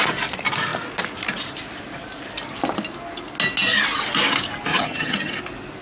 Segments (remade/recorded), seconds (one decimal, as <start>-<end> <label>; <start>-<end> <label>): 0.0-4.7 recorded; 4.7-5.3 remade; 5.3-5.8 recorded